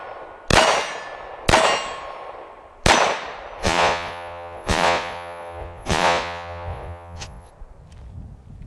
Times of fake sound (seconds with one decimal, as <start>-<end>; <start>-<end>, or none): 3.6-7.5